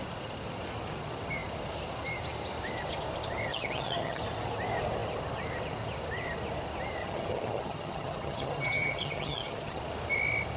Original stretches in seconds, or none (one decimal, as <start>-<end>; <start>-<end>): 0.0-3.5; 4.2-7.0; 9.8-10.6